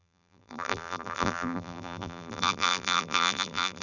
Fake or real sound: fake